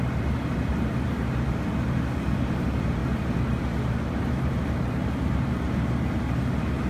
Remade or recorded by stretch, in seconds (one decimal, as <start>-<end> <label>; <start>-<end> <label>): 0.0-3.0 remade; 3.0-3.6 recorded; 3.6-6.9 remade